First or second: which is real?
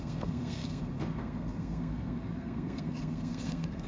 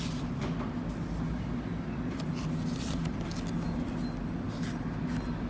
second